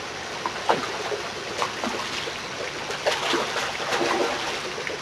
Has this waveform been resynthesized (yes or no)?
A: no